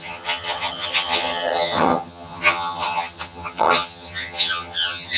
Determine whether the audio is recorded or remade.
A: remade